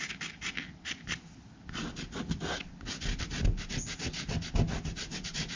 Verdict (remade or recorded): recorded